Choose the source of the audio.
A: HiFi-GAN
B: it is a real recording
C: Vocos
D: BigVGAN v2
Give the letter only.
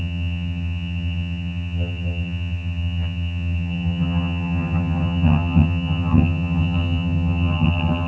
A